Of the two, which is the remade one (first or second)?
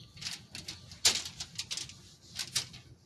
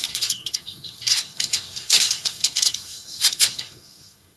second